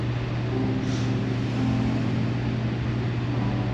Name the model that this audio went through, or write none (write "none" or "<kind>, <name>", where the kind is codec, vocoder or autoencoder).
none